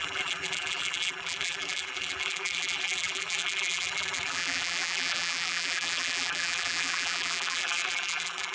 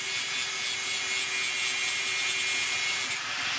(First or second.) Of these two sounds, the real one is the second